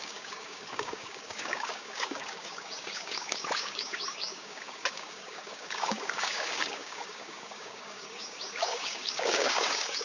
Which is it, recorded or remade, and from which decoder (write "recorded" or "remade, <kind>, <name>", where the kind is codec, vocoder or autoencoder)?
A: remade, codec, DAC